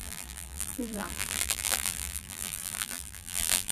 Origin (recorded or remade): remade